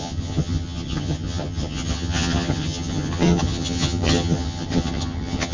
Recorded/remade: remade